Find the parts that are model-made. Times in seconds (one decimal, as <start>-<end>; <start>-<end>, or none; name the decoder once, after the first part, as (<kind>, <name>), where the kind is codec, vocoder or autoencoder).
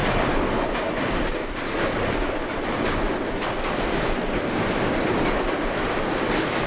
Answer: 0.0-6.7 (vocoder, BigVGAN v2)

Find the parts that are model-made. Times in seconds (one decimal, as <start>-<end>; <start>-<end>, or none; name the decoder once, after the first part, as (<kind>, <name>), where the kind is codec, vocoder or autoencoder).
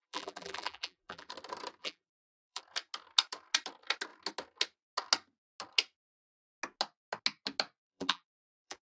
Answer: 0.0-1.3 (vocoder, BigVGAN v2); 1.8-2.6; 7.8-8.8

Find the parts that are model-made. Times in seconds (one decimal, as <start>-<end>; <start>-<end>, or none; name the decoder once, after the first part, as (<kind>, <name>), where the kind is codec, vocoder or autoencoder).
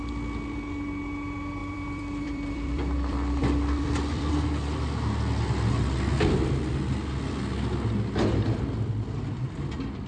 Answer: 1.6-4.3 (vocoder, BigVGAN v2)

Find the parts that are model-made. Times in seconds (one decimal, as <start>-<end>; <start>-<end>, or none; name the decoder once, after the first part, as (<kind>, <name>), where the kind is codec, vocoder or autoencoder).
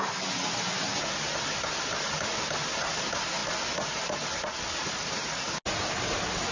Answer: none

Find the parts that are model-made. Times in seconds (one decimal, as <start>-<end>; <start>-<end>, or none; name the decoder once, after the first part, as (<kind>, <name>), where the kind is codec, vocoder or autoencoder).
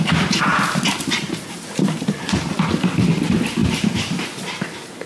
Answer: 0.5-3.1 (vocoder, BigVGAN v2); 3.6-4.2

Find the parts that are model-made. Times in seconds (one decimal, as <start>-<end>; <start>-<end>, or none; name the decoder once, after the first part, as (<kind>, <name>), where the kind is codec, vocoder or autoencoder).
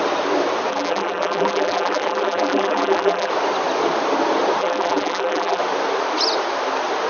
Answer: 0.7-3.3 (vocoder, BigVGAN v2); 4.6-5.6